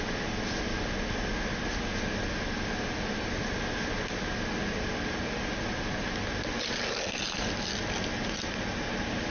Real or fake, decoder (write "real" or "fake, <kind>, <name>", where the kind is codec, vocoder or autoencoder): real